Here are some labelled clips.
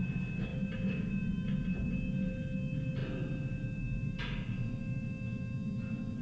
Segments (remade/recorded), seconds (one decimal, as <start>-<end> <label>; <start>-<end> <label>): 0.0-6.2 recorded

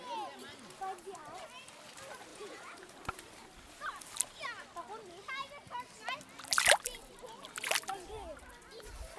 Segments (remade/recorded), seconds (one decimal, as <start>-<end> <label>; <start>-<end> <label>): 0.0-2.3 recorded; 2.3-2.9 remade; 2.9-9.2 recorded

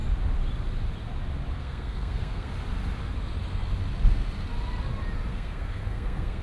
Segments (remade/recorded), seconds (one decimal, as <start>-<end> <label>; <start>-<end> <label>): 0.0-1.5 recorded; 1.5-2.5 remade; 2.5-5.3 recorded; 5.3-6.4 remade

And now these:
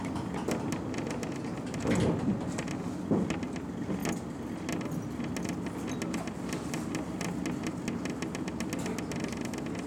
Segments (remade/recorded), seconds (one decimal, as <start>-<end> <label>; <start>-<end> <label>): 0.0-9.9 recorded